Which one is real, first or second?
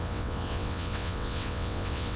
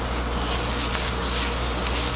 second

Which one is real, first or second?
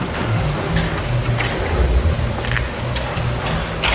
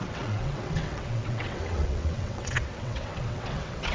first